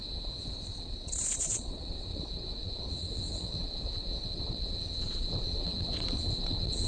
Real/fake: fake